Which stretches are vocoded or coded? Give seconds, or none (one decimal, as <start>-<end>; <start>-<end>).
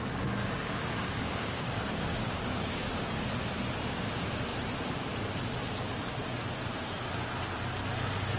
0.4-3.2